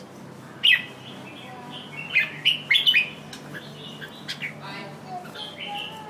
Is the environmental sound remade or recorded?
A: recorded